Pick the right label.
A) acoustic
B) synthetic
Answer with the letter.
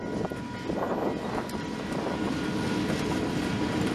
A